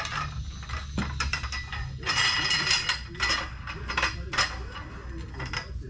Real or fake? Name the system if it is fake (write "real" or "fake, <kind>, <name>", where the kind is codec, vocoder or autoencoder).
real